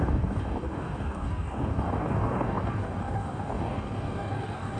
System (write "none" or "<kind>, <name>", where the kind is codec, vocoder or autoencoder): codec, DAC